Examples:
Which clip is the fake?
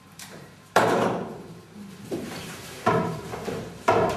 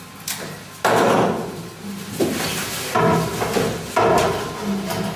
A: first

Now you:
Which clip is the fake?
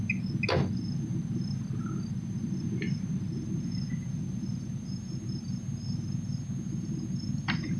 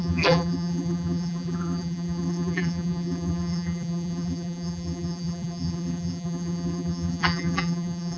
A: second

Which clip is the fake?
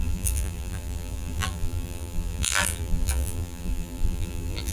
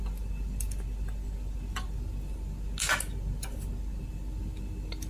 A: first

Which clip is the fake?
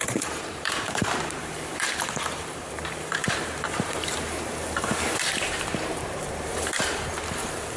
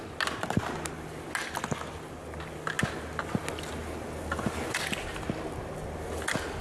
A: first